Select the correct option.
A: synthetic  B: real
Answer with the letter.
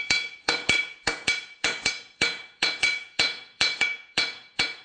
A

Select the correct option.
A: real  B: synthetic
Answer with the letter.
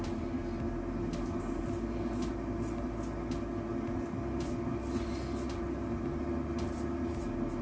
A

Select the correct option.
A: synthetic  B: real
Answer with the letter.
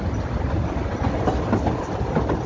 B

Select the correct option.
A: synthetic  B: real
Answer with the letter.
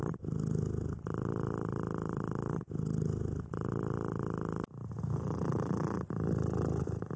B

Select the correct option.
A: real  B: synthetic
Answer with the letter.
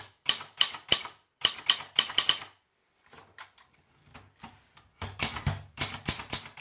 B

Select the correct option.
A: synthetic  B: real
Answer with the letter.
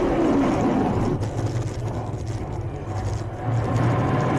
B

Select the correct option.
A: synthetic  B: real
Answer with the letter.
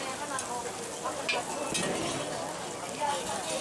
B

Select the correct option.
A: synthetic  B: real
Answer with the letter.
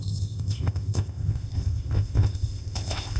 A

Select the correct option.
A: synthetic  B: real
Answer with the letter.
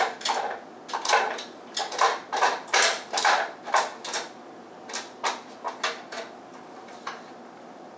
B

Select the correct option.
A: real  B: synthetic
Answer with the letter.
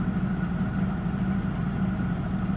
A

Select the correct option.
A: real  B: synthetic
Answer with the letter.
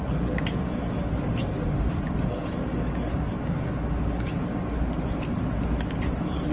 A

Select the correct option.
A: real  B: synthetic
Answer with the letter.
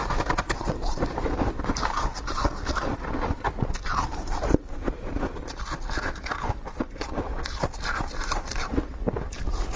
A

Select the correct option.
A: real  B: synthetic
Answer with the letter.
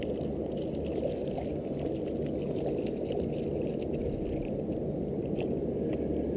A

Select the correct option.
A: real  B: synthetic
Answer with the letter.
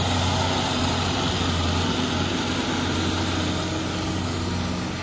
A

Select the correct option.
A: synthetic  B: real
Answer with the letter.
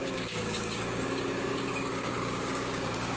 A